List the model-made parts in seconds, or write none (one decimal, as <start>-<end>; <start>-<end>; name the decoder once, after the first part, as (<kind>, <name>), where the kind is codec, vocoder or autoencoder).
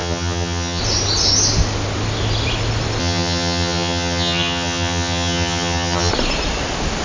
0.0-0.8 (vocoder, HiFi-GAN); 3.0-6.1